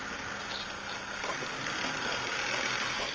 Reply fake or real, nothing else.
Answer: real